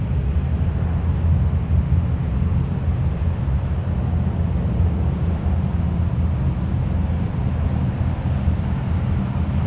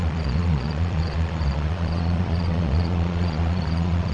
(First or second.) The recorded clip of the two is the first